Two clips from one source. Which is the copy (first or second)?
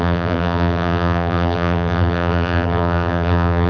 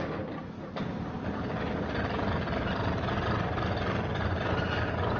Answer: first